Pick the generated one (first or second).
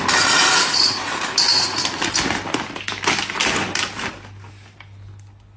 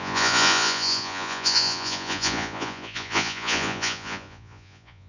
second